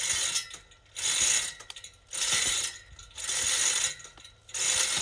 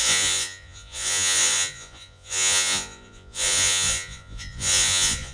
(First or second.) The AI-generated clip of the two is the second